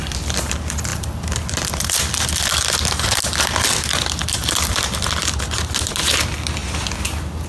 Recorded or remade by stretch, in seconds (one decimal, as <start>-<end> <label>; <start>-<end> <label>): 0.0-7.5 recorded